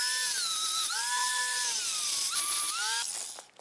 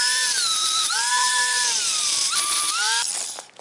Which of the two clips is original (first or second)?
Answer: first